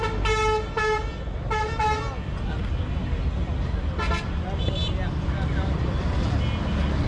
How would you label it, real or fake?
real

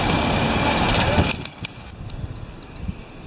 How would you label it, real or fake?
real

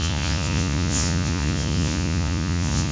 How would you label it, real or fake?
fake